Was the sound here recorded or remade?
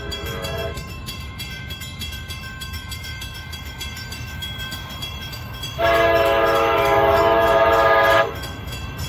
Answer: remade